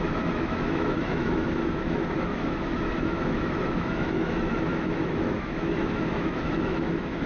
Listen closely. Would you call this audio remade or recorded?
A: remade